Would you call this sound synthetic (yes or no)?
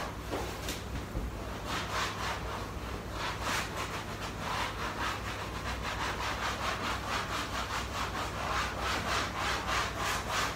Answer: no